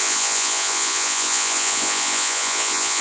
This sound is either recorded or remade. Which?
remade